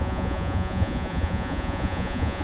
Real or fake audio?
fake